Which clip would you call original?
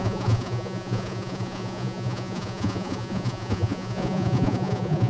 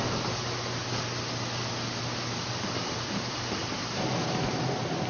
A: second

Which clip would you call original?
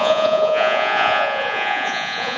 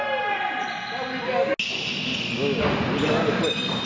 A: second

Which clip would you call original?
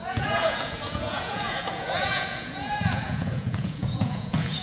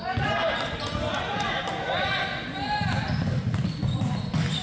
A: second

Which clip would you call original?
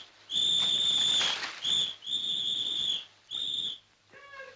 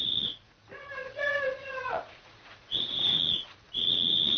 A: first